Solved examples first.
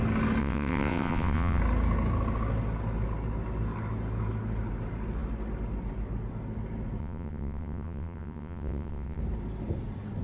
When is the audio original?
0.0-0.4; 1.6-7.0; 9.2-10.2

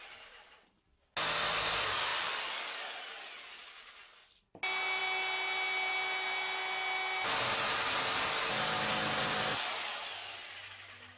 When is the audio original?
0.0-11.2